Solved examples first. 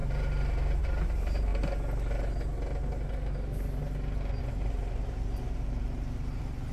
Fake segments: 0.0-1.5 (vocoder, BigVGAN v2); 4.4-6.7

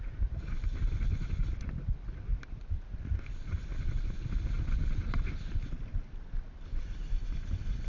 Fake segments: 2.3-3.0 (vocoder, BigVGAN v2)

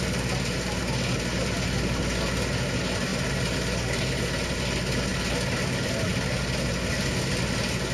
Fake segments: none

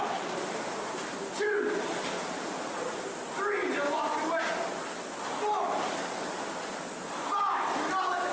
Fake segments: none

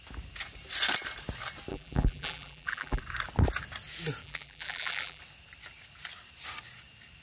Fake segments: 1.7-3.0 (vocoder, BigVGAN v2); 4.2-5.2

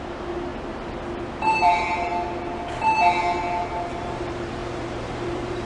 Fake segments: 0.0-0.5 (vocoder, BigVGAN v2); 1.4-2.1; 2.8-5.6